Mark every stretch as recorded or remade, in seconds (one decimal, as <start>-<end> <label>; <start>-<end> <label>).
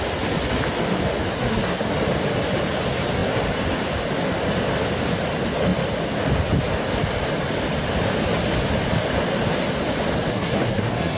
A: 0.0-1.2 recorded; 1.2-1.9 remade; 1.9-10.3 recorded; 10.3-11.2 remade